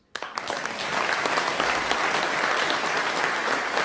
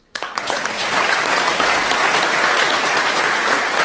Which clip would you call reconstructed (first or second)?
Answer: second